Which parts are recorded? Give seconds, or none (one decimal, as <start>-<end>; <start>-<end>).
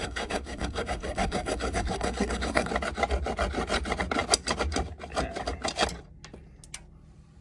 2.7-7.4